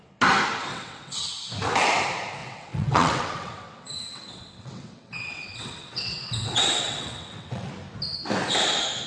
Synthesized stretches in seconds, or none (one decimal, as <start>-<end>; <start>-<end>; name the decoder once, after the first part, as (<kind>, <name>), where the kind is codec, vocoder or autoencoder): 0.7-1.3 (vocoder, WaveNeXt); 2.4-7.7

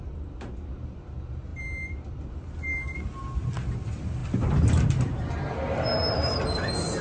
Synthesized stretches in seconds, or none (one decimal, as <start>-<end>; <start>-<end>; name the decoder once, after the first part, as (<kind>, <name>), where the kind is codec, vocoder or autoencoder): none